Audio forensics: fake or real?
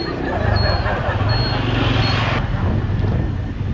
real